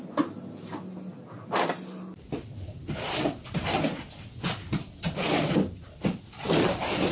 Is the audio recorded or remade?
recorded